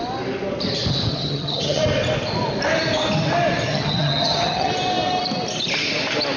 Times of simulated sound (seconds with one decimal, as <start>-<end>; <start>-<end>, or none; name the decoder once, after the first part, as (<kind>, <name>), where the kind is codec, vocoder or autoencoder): 1.1-1.8 (vocoder, HiFi-GAN); 3.7-4.7

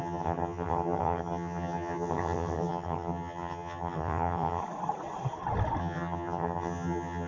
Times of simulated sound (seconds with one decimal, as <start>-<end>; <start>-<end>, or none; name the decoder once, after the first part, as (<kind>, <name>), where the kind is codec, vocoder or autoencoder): 0.0-4.6 (vocoder, HiFi-GAN); 5.8-7.3